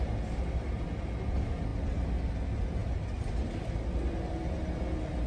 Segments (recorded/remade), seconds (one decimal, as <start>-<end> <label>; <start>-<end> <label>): 0.0-5.3 recorded